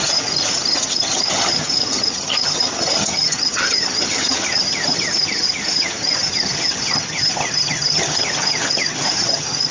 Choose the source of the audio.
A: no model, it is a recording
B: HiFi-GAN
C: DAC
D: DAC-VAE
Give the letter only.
B